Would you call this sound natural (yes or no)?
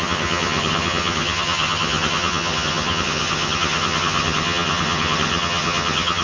no